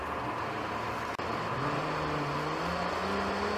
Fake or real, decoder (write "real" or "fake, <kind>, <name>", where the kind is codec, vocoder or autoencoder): real